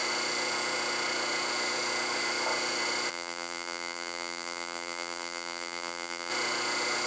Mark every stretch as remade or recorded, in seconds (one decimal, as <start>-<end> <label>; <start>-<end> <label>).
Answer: 0.0-3.1 recorded; 3.1-6.3 remade; 6.3-7.1 recorded